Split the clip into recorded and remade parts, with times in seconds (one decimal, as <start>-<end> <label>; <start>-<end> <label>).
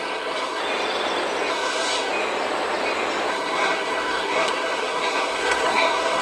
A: 0.0-0.6 remade; 0.6-1.5 recorded; 1.5-2.1 remade; 2.1-3.3 recorded; 3.3-6.2 remade